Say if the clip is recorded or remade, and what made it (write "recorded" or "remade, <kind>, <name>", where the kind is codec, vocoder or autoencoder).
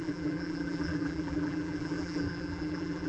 remade, vocoder, BigVGAN v2